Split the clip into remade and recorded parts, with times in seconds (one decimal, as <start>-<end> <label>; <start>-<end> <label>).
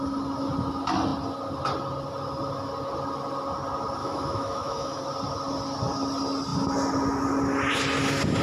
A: 0.0-4.0 recorded; 4.0-5.0 remade; 5.0-8.4 recorded